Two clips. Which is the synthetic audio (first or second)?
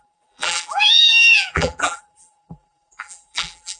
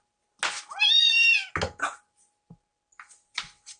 first